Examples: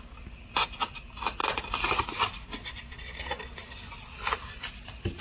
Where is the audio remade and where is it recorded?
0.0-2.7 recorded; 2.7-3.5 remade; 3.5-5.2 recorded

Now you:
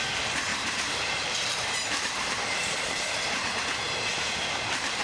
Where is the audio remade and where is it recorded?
0.0-0.5 recorded; 0.5-3.5 remade; 3.5-4.1 recorded; 4.1-5.0 remade

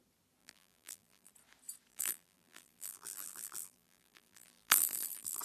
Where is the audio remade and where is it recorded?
0.0-0.4 recorded; 0.4-1.3 remade; 1.3-1.9 recorded; 1.9-5.4 remade

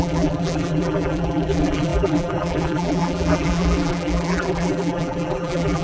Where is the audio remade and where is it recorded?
0.0-5.8 remade